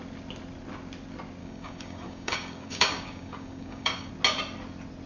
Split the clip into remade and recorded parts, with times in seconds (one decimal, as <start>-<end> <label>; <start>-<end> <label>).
0.0-1.4 recorded; 1.4-4.1 remade; 4.1-5.1 recorded